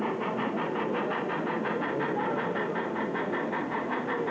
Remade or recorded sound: recorded